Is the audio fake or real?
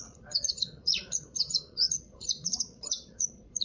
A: fake